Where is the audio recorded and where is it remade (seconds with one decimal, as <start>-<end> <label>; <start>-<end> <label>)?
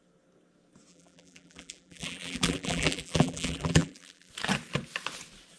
0.0-0.9 recorded; 0.9-4.3 remade; 4.3-5.6 recorded